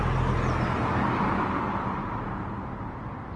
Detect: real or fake real